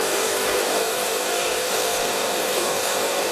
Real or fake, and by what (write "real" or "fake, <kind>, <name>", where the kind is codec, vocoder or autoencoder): fake, codec, DAC